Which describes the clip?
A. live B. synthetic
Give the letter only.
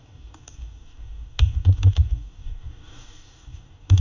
B